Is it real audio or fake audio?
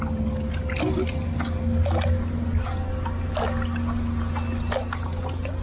real